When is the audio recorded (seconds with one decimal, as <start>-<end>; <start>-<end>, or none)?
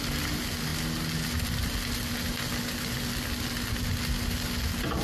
0.0-5.0